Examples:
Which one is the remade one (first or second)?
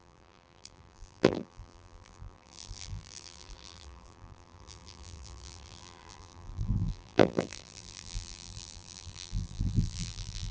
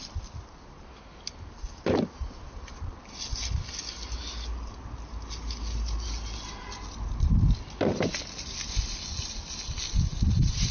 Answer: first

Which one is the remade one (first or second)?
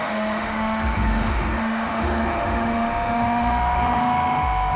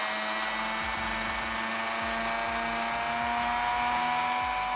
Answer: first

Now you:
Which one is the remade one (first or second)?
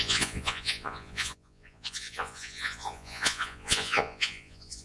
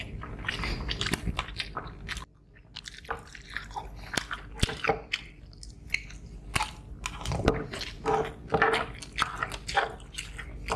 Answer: first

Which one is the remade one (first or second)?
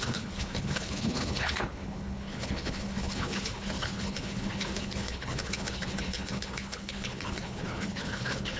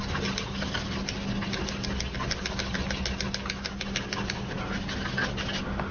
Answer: first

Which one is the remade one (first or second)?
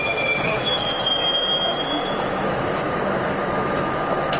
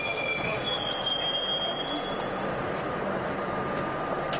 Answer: first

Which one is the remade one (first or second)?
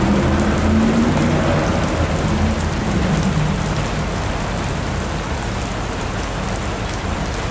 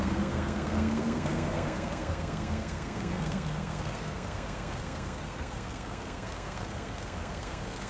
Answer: second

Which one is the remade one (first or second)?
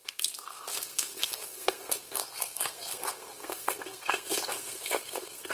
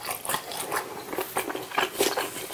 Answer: first